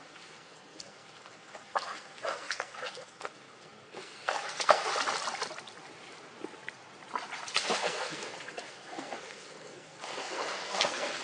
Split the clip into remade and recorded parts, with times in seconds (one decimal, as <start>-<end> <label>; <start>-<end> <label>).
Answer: 0.0-4.9 remade; 4.9-7.6 recorded; 7.6-11.2 remade